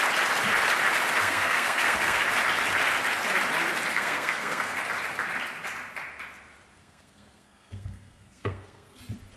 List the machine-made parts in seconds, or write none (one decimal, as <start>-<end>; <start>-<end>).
1.2-2.2; 3.9-4.8; 6.8-9.0